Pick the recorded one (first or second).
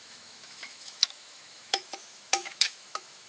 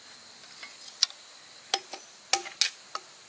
second